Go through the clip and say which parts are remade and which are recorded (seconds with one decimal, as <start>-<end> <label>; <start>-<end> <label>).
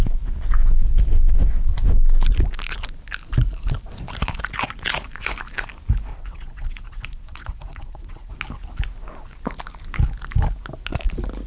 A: 0.0-6.1 recorded; 6.1-8.3 remade; 8.3-11.5 recorded